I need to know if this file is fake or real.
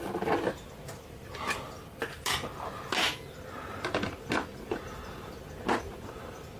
real